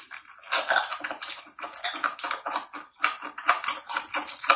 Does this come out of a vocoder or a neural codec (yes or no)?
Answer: no